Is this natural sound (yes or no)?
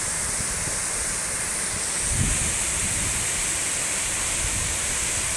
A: yes